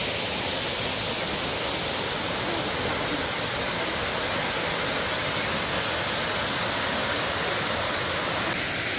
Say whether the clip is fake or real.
real